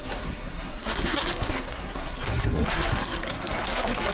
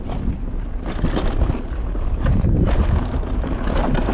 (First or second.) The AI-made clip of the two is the first